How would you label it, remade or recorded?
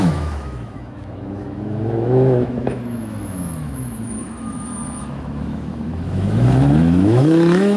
remade